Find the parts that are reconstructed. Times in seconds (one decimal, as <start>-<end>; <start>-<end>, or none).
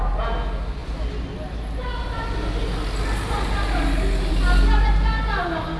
none